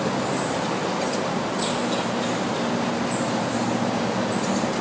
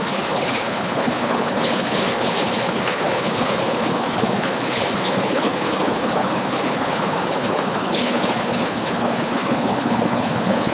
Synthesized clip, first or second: second